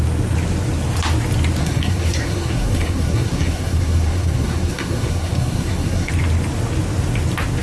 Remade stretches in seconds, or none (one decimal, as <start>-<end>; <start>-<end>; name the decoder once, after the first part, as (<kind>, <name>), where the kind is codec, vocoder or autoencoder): 1.6-6.1 (codec, SNAC)